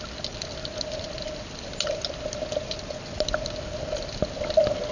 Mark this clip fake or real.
real